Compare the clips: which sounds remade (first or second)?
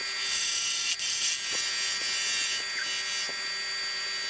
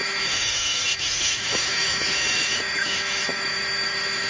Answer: second